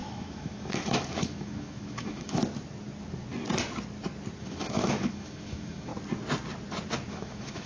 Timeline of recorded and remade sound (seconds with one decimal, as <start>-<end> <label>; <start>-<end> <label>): 0.0-2.4 remade; 2.4-4.4 recorded; 4.4-5.9 remade; 5.9-7.1 recorded; 7.1-7.7 remade